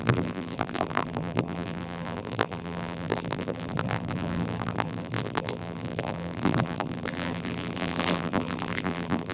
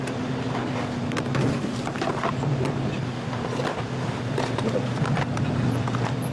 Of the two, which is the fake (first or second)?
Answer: first